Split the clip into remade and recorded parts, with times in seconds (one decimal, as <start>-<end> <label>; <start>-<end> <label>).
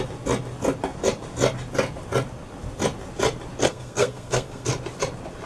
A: 0.0-3.6 recorded; 3.6-4.7 remade; 4.7-5.5 recorded